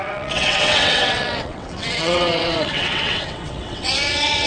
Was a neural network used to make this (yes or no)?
yes